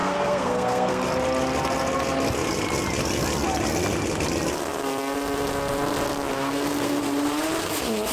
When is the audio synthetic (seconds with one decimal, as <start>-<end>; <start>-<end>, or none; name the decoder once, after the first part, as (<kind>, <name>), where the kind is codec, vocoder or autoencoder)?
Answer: 0.0-1.0 (codec, SNAC); 6.3-7.0